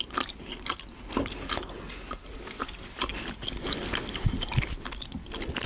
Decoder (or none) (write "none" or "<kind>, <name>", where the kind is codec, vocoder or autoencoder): none